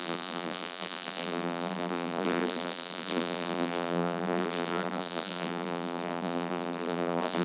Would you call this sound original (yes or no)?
no